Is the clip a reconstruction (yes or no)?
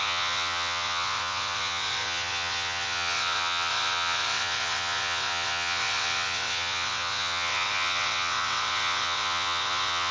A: yes